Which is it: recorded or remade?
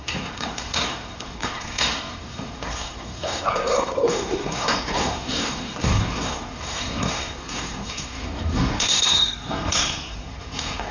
remade